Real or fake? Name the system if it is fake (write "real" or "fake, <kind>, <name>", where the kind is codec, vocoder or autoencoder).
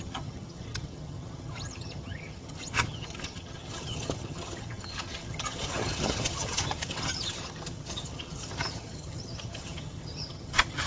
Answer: fake, vocoder, HiFi-GAN